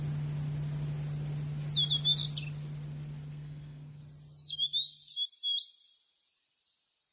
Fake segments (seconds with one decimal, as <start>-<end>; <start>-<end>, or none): 3.3-4.0